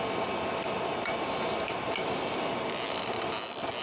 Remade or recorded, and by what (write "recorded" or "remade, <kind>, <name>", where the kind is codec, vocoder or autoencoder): recorded